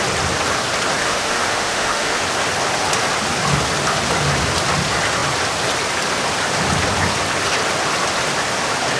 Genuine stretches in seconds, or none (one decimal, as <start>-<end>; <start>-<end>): 0.0-1.0; 2.2-9.0